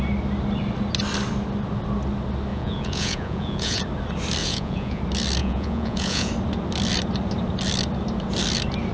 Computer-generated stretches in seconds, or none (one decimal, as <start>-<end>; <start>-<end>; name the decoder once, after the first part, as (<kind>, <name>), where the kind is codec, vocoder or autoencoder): 2.5-3.8 (vocoder, Vocos); 4.4-5.0; 5.4-6.3